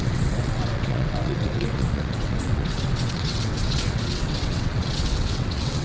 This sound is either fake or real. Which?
fake